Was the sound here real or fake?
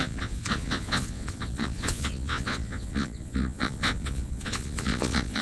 fake